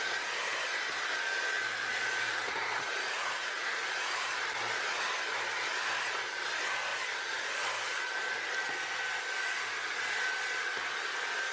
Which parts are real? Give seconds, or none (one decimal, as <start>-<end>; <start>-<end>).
0.0-1.9; 4.3-11.5